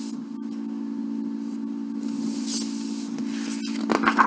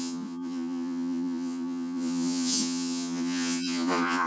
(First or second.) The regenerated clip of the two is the second